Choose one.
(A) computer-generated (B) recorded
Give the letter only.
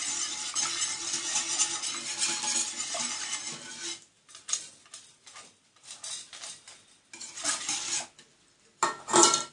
B